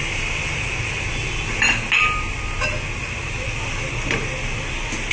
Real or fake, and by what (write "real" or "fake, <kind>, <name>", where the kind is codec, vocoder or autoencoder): real